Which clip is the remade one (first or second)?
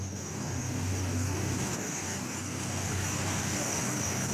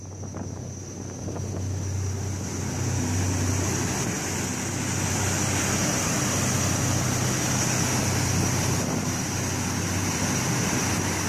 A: first